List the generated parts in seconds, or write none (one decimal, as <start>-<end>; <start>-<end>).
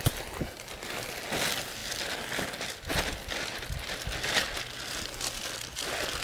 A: none